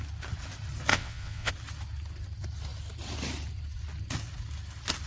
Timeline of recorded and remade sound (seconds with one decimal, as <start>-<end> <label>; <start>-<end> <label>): 0.0-0.9 recorded; 0.9-1.5 remade; 1.5-5.1 recorded